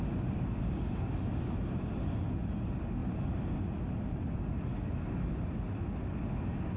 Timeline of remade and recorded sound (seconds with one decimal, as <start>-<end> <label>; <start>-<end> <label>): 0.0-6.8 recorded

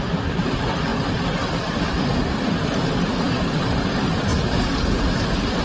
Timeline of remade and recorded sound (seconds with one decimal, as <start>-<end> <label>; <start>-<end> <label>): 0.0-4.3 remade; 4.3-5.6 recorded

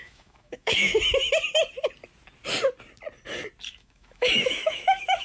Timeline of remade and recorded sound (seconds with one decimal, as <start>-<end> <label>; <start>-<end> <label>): 0.0-0.9 remade; 0.9-3.7 recorded; 3.7-5.2 remade